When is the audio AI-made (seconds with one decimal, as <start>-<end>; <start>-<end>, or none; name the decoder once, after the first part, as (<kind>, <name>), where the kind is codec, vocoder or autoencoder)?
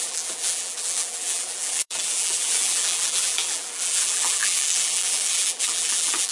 0.0-6.3 (vocoder, BigVGAN v2)